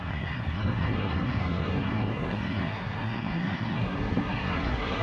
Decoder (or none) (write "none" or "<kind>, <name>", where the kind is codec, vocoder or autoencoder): codec, SNAC